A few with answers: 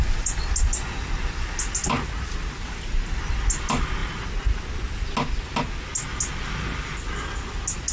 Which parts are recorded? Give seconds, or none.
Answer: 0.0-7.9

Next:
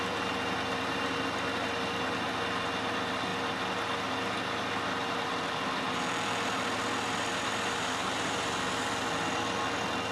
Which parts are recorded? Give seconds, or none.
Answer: 0.0-10.1

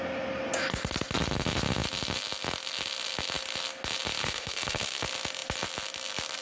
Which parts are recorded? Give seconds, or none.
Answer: 0.0-4.2; 5.0-6.4